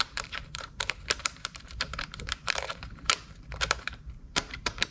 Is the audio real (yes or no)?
no